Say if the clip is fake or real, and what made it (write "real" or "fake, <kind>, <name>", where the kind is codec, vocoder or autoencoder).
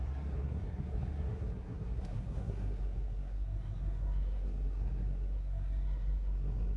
fake, codec, SNAC